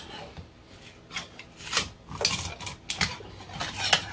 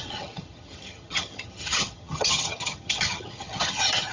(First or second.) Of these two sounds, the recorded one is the first